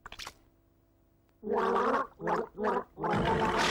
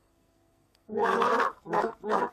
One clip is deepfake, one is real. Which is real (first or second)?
first